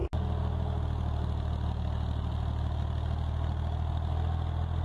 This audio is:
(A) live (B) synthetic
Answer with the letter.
A